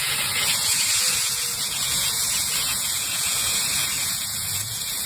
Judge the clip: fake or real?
fake